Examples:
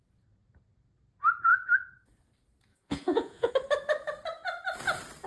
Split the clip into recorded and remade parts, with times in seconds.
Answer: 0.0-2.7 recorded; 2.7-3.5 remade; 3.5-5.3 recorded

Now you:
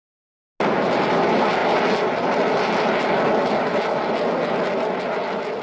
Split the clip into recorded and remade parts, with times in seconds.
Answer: 0.0-5.6 recorded

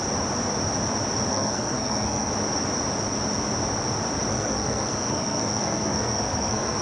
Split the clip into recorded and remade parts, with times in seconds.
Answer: 0.0-1.3 recorded; 1.3-2.3 remade; 2.3-4.3 recorded; 4.3-6.8 remade

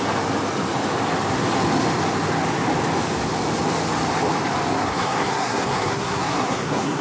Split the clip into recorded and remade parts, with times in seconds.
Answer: 0.0-4.7 recorded; 4.7-7.0 remade

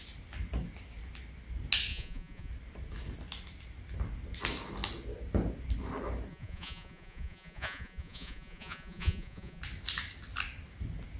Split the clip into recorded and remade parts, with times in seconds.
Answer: 0.0-1.9 recorded; 1.9-2.5 remade; 2.5-6.3 recorded; 6.3-9.6 remade; 9.6-11.2 recorded

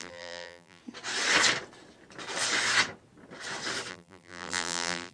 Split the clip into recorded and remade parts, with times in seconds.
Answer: 0.0-0.8 remade; 0.8-3.9 recorded; 3.9-5.1 remade

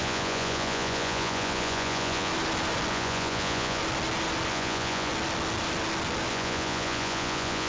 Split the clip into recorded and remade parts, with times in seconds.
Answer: 0.0-2.3 remade; 2.3-2.9 recorded; 2.9-3.8 remade; 3.8-4.5 recorded; 4.5-5.1 remade; 5.1-6.3 recorded; 6.3-7.7 remade

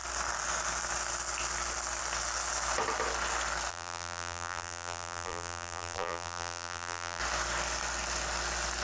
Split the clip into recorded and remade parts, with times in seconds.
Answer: 0.0-3.7 recorded; 3.7-7.2 remade; 7.2-8.8 recorded